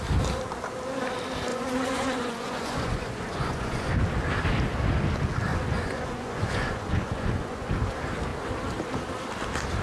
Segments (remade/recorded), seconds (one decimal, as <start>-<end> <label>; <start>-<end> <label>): 0.0-1.5 recorded; 1.5-3.9 remade; 3.9-5.5 recorded; 5.5-7.7 remade; 7.7-9.8 recorded